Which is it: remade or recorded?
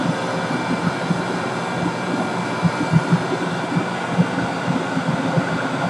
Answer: recorded